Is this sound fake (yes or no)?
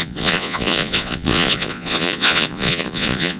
yes